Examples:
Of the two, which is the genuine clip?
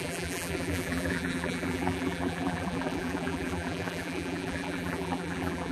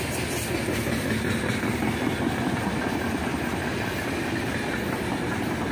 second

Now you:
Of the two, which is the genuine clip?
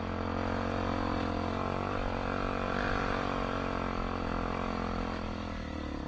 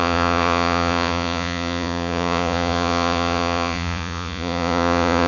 first